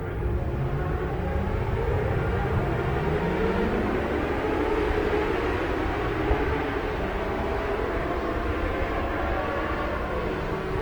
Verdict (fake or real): real